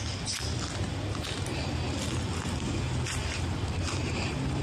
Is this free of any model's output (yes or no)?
yes